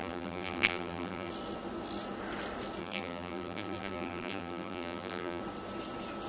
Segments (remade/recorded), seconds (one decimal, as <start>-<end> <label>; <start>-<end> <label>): 0.0-1.3 remade; 1.3-2.8 recorded; 2.8-5.4 remade; 5.4-6.3 recorded

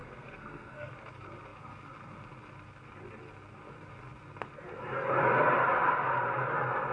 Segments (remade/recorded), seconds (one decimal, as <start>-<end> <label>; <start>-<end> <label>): 0.0-0.9 remade; 0.9-6.9 recorded

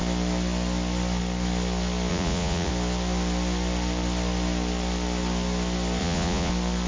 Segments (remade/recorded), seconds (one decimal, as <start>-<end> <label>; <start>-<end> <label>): 0.0-2.1 recorded; 2.1-2.7 remade; 2.7-6.0 recorded; 6.0-6.5 remade; 6.5-6.9 recorded

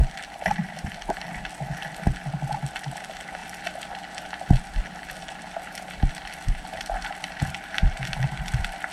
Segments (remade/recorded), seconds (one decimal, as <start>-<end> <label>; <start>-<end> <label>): 0.0-1.3 remade; 1.3-8.9 recorded

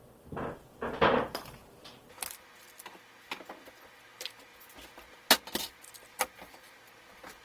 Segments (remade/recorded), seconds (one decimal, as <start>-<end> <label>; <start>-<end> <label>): 0.0-7.4 recorded

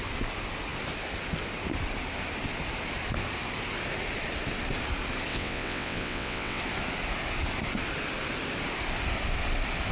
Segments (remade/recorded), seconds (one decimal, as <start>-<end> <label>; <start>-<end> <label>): 0.0-5.3 recorded; 5.3-6.6 remade; 6.6-9.9 recorded

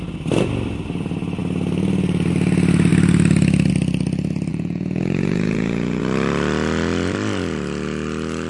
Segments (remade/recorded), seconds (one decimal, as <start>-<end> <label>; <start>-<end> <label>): 0.0-4.5 recorded; 4.5-6.0 remade; 6.0-8.5 recorded